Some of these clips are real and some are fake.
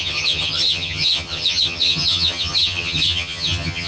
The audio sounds fake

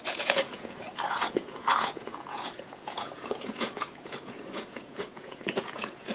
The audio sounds fake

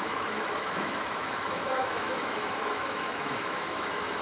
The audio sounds fake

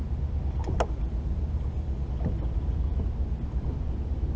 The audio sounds real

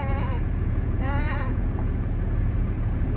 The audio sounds fake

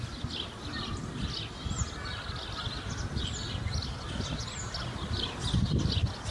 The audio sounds real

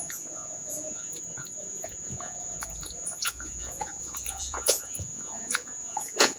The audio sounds fake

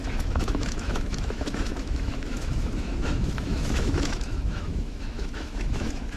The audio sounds fake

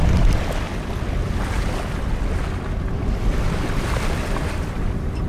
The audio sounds real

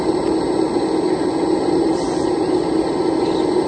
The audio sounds real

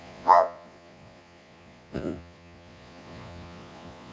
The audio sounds fake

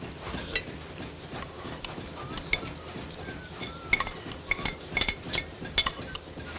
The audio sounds real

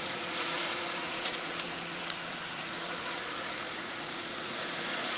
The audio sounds fake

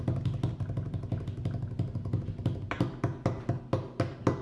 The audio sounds real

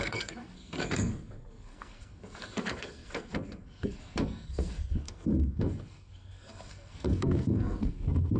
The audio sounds fake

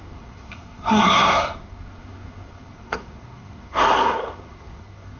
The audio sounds fake